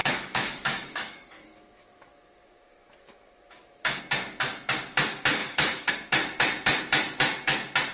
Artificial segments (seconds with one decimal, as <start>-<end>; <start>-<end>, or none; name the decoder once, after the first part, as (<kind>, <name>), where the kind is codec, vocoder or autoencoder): 0.0-4.0 (autoencoder, DAC-VAE); 5.4-5.9